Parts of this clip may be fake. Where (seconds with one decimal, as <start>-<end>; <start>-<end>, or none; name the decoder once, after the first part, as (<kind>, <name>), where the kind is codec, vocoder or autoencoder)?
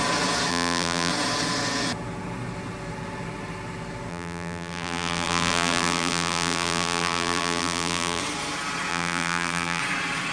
0.5-1.1 (vocoder, BigVGAN v2); 4.1-8.2; 8.9-9.8